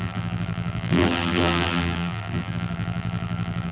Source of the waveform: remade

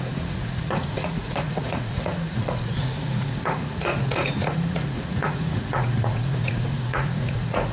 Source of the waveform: remade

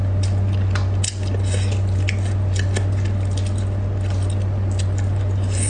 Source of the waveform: recorded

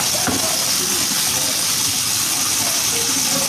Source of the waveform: recorded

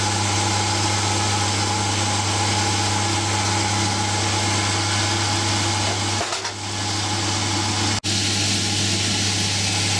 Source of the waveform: recorded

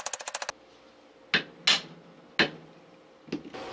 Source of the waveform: recorded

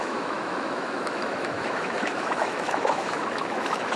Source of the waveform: remade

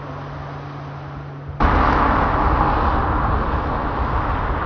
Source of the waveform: recorded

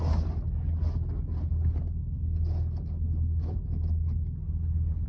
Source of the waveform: recorded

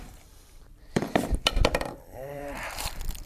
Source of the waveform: remade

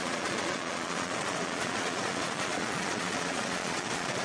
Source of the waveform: remade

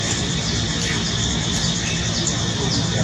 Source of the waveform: recorded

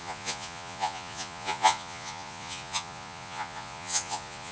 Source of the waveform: remade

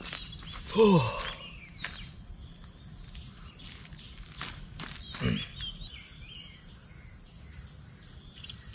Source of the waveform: recorded